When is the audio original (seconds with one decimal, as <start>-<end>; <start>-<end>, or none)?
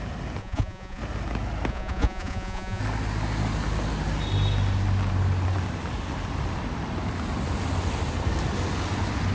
0.0-0.4; 1.0-1.7; 2.8-9.3